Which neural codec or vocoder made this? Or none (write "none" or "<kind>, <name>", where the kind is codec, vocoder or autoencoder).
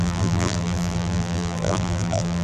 vocoder, BigVGAN v2